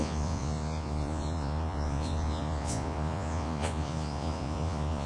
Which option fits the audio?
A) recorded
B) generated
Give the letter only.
B